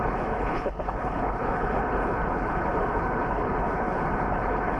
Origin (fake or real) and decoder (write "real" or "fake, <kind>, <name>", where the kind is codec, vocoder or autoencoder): fake, codec, HILCodec